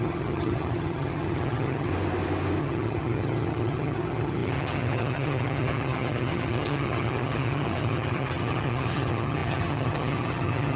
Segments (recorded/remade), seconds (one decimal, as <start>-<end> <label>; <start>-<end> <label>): 0.0-1.9 remade; 1.9-2.6 recorded; 2.6-10.8 remade

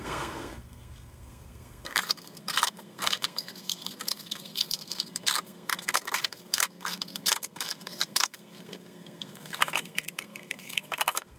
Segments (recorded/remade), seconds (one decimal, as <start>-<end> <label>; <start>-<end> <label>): 0.0-11.4 remade

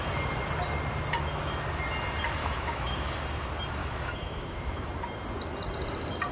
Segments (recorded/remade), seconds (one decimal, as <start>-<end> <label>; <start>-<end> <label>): 0.0-2.4 recorded; 2.4-3.1 remade; 3.1-3.8 recorded; 3.8-4.9 remade; 4.9-6.3 recorded